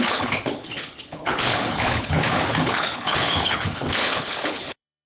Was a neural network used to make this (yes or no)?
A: yes